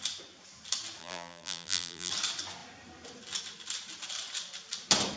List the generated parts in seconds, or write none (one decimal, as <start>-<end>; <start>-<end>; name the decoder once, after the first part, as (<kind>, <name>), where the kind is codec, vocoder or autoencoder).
1.0-2.1 (vocoder, BigVGAN v2)